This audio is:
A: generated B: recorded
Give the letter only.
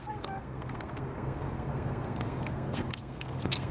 A